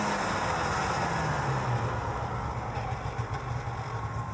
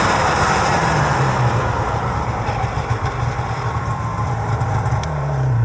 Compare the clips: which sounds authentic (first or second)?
first